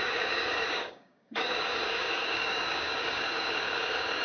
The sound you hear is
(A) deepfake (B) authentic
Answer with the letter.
A